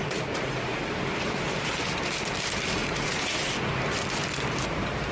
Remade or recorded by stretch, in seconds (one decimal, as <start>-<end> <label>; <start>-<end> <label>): 0.0-0.8 remade; 0.8-2.8 recorded; 2.8-3.5 remade; 3.5-5.1 recorded